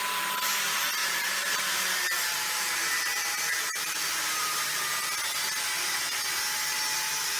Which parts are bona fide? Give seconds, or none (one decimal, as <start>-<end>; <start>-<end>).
0.0-1.0; 4.8-7.4